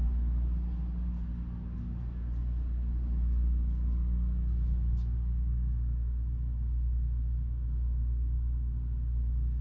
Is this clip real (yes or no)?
yes